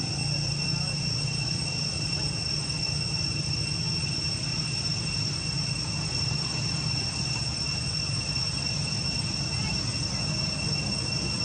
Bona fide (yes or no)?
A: yes